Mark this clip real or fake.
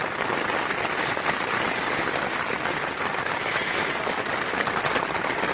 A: fake